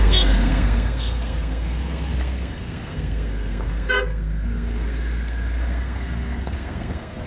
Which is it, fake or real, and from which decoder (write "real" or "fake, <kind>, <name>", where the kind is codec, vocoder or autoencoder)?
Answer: fake, codec, SNAC